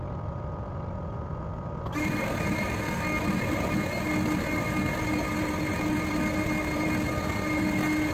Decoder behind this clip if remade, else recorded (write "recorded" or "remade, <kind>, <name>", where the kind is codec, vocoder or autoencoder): recorded